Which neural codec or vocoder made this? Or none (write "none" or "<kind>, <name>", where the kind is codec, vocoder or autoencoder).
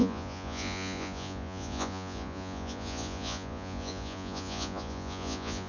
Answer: vocoder, Vocos